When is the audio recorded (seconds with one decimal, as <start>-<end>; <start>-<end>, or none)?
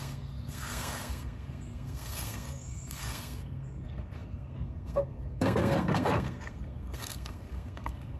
none